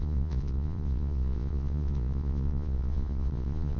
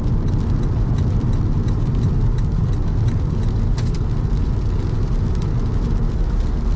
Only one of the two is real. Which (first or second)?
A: second